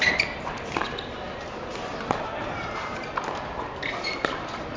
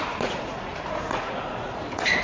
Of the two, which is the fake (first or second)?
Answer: second